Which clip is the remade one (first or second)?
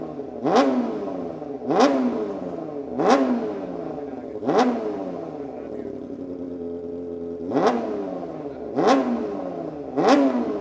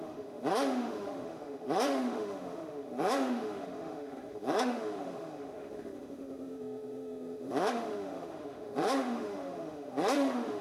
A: second